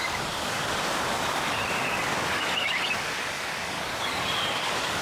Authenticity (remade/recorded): remade